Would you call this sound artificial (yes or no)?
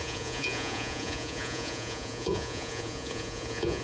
yes